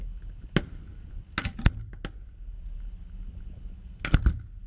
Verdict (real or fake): real